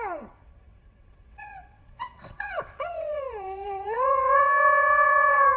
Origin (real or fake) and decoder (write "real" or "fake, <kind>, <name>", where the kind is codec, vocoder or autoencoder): fake, vocoder, WaveNeXt